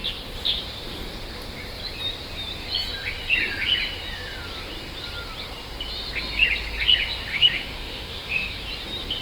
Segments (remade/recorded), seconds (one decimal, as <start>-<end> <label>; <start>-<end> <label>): 0.0-7.3 recorded; 7.3-8.6 remade; 8.6-9.2 recorded